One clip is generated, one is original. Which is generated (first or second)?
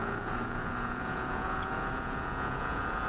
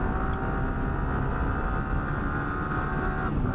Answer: first